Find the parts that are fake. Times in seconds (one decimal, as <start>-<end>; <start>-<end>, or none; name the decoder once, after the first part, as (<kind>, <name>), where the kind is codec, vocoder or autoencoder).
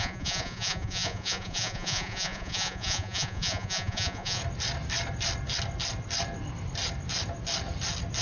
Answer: 0.0-4.4 (vocoder, Vocos)